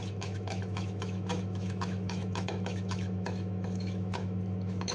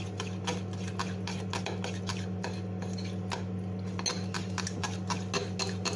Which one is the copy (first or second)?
first